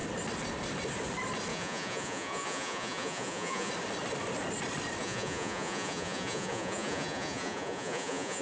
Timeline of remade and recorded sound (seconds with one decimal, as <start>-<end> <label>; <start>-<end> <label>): 0.0-1.5 recorded; 1.5-3.7 remade; 3.7-5.0 recorded; 5.0-8.4 remade

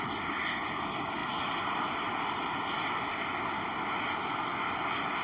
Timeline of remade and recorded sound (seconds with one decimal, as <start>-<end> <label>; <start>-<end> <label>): 0.0-5.2 recorded

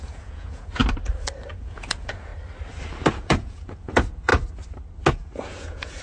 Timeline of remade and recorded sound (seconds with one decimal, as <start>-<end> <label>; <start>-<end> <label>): 0.0-0.8 remade; 0.8-1.5 recorded; 1.5-2.3 remade; 2.3-3.1 recorded; 3.1-4.3 remade; 4.3-5.1 recorded; 5.1-6.0 remade

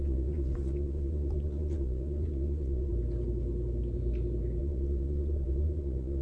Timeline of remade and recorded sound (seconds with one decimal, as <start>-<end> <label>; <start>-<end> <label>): 0.0-2.9 remade; 2.9-4.6 recorded; 4.6-6.2 remade

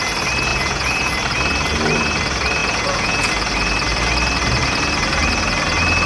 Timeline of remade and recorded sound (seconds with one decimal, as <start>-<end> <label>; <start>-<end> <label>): 0.0-0.5 recorded; 0.5-1.1 remade; 1.1-2.6 recorded; 2.6-3.3 remade; 3.3-6.1 recorded

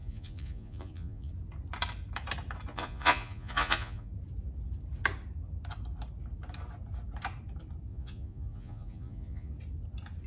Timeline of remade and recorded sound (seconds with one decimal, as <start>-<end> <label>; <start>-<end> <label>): 0.0-1.3 remade; 1.3-2.7 recorded; 2.7-4.1 remade; 4.1-7.9 recorded; 7.9-9.5 remade; 9.5-10.3 recorded